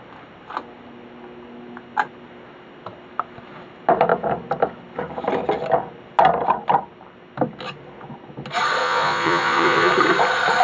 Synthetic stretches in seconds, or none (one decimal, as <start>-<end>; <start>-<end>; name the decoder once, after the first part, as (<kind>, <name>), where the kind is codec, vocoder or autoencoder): 8.8-9.9 (vocoder, Vocos)